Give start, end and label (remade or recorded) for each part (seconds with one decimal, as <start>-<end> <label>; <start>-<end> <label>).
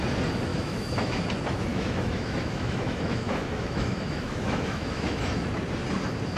0.0-0.5 recorded; 0.5-1.2 remade; 1.2-1.7 recorded; 1.7-5.5 remade; 5.5-6.4 recorded